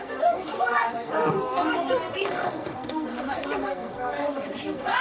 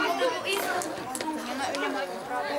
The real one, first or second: second